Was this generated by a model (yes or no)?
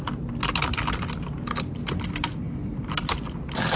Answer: no